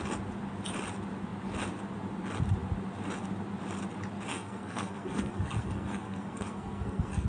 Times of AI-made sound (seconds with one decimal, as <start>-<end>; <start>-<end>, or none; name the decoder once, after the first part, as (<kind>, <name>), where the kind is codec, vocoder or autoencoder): 4.3-7.3 (codec, SNAC)